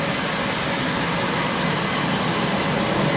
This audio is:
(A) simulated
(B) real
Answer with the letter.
B